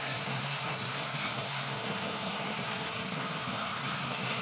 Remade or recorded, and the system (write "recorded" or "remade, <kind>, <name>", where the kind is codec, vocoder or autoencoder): remade, codec, SNAC